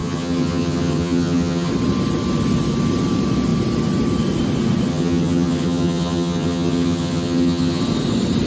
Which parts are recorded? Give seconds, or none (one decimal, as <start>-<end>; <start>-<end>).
1.7-4.9; 7.8-8.5